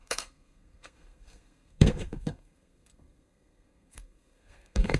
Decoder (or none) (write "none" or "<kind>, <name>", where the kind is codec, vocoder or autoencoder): codec, SNAC